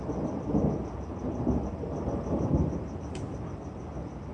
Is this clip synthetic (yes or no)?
no